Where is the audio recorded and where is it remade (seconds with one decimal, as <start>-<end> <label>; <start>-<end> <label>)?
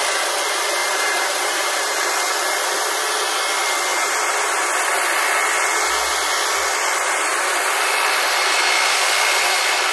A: 0.0-0.8 recorded; 0.8-2.1 remade; 2.1-3.9 recorded; 3.9-4.6 remade; 4.6-9.9 recorded